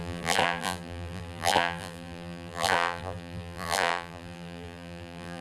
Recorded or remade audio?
remade